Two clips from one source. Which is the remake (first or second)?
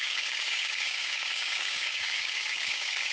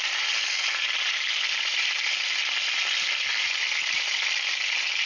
first